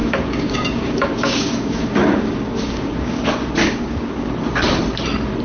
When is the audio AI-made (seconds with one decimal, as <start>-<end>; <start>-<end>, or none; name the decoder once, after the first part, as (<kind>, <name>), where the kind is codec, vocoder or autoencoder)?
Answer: 0.0-3.2 (codec, DAC); 3.6-4.3